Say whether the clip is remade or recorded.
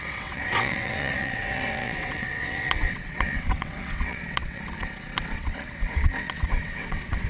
remade